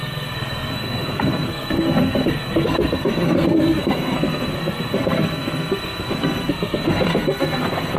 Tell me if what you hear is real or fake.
fake